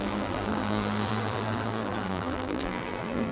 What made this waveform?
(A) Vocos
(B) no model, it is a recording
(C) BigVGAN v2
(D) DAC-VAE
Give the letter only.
C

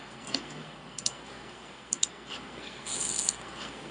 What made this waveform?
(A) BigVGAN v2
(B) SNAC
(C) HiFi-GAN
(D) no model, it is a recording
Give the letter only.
B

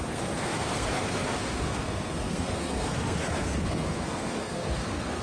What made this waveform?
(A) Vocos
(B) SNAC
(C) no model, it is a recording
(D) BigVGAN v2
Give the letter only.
B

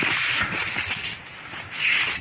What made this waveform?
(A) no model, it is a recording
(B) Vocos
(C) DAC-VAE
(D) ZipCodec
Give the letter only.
A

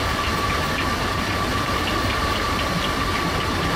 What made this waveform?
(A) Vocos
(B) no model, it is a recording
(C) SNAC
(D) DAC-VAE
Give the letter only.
B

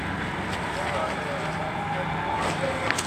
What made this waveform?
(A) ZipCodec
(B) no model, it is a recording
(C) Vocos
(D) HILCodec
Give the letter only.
B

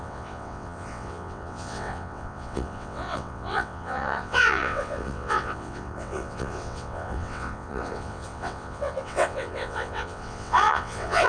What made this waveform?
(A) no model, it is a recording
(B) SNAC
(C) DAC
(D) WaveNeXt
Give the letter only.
D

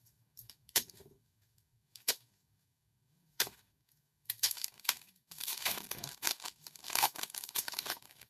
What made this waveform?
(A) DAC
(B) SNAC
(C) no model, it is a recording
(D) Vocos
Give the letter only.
A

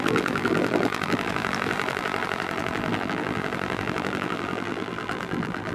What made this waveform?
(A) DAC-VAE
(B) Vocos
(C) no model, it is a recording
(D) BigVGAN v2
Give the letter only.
D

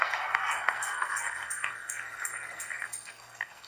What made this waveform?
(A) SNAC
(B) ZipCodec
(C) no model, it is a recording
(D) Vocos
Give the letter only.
A